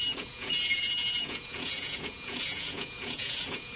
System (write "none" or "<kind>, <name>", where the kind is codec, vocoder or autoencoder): vocoder, Vocos